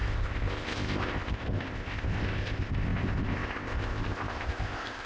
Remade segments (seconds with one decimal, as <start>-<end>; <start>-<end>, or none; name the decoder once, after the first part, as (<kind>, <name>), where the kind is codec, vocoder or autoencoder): 0.0-5.1 (codec, ZipCodec)